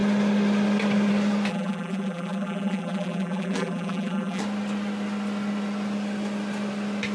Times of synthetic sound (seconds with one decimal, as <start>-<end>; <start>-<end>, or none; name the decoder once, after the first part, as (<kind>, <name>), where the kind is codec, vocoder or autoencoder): 1.5-4.4 (vocoder, BigVGAN v2)